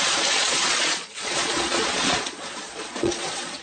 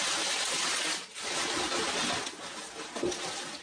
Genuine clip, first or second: second